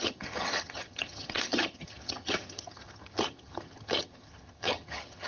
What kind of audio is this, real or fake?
fake